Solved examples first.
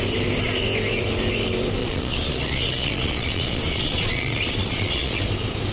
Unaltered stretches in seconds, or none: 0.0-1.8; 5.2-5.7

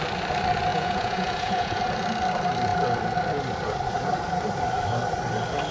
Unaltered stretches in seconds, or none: 0.0-0.7; 1.8-5.7

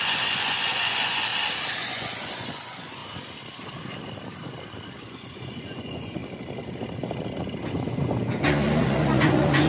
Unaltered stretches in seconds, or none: 1.3-1.8; 3.0-5.0; 6.2-7.7

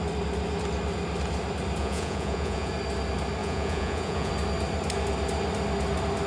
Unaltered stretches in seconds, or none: 0.0-1.8; 2.7-3.4; 4.3-6.3

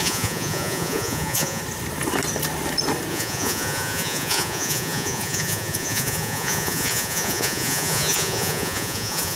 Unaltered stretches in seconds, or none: 1.6-3.1

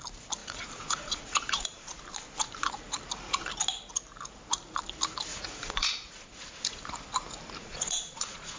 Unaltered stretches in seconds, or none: 0.0-0.4; 2.0-5.3; 6.8-7.6

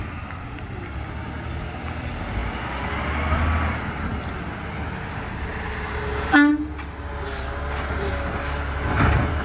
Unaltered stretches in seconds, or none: 0.0-9.4